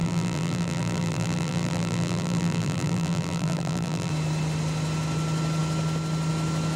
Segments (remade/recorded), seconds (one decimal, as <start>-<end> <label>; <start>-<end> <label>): 0.0-4.1 remade; 4.1-6.8 recorded